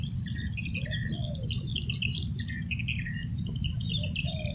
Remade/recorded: recorded